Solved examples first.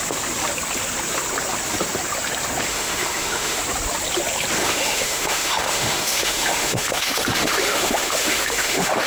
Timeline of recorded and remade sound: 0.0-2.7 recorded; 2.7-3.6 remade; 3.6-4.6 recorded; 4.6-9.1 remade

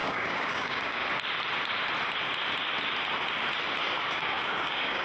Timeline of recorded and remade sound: 0.0-1.0 remade; 1.0-4.0 recorded; 4.0-5.0 remade

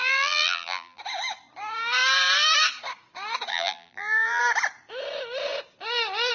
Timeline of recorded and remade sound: 0.0-1.0 remade; 1.0-3.5 recorded; 3.5-4.4 remade; 4.4-6.3 recorded

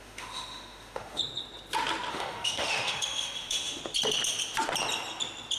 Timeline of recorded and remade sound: 0.0-1.2 remade; 1.2-2.1 recorded; 2.1-3.8 remade; 3.8-5.6 recorded

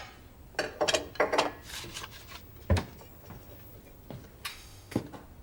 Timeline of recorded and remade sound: 0.0-4.5 recorded; 4.5-5.0 remade; 5.0-5.4 recorded

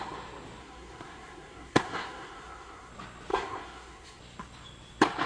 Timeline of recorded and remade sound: 0.0-0.6 recorded; 0.6-2.9 remade; 2.9-3.3 recorded; 3.3-4.2 remade; 4.2-5.3 recorded

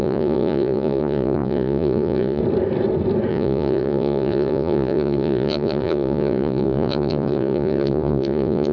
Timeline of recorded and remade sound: 0.0-2.4 remade; 2.4-3.3 recorded; 3.3-8.7 remade